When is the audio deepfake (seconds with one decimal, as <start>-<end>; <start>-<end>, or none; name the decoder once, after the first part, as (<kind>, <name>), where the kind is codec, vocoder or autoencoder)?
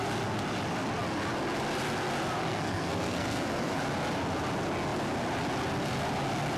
2.4-3.8 (codec, SNAC)